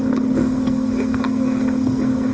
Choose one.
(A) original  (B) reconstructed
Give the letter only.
B